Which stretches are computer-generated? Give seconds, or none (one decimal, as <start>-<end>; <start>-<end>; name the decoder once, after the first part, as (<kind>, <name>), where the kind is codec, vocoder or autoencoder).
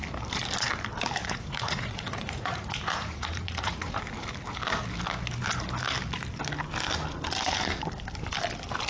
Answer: 1.2-4.0 (vocoder, Vocos)